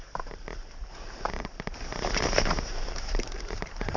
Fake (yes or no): yes